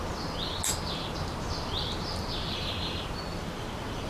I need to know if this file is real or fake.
real